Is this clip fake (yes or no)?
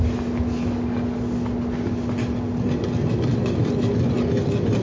no